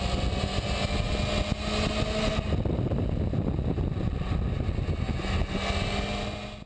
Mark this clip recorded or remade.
recorded